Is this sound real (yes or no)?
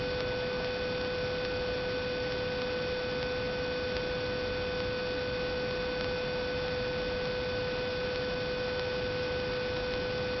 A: yes